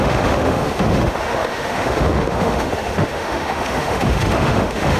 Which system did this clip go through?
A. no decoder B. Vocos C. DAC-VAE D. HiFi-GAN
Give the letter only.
C